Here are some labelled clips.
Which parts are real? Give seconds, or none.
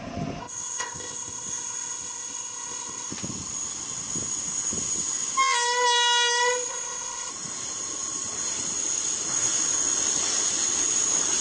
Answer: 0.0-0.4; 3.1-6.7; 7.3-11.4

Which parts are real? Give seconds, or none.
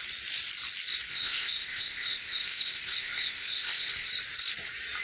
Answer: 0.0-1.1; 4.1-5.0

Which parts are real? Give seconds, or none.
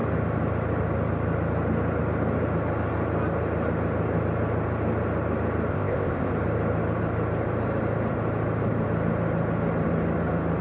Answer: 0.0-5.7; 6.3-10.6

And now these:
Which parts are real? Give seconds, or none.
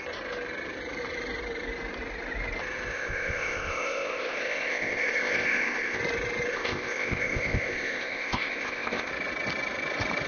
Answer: 0.0-2.9; 6.0-6.5; 9.1-10.3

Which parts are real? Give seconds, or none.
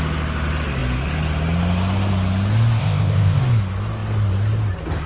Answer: 0.0-2.8; 3.4-5.1